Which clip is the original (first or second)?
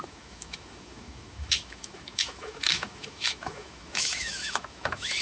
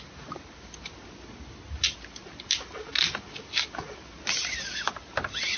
second